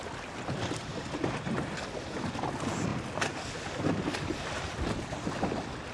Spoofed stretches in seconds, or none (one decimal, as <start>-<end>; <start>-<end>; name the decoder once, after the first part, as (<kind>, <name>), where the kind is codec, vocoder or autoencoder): none